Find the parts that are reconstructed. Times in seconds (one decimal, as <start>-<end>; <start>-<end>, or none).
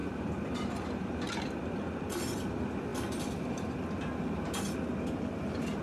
0.0-2.0; 2.9-3.9